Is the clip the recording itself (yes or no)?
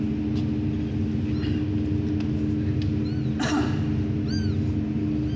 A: yes